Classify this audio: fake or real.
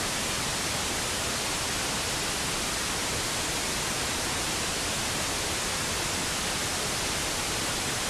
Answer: real